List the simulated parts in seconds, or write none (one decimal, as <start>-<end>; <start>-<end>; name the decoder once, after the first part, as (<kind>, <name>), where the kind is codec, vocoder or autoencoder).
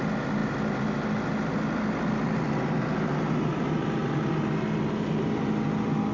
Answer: none